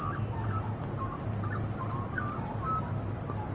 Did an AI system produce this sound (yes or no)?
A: no